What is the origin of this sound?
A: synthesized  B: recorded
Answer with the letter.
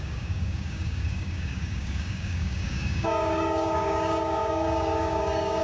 A